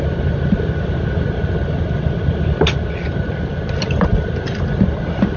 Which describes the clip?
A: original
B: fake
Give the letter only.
A